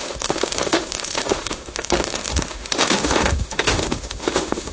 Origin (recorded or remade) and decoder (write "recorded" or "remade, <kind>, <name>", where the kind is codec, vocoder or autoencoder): remade, autoencoder, DAC-VAE